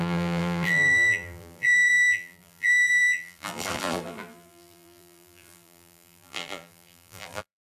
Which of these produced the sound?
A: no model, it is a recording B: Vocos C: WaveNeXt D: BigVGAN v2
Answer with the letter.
D